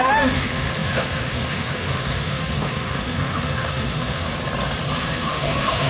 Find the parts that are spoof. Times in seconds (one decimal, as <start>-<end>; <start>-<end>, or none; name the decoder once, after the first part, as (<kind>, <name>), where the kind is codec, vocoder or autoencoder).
0.0-4.3 (autoencoder, DAC-VAE); 5.0-5.9